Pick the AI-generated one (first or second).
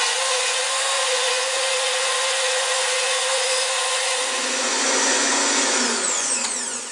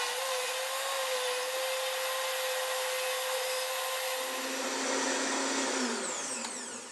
first